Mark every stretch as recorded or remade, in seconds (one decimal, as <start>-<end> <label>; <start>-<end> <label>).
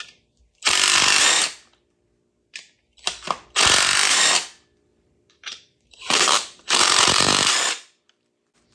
0.0-4.9 recorded; 4.9-7.3 remade; 7.3-8.7 recorded